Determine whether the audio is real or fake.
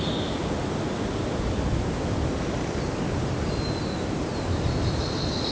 real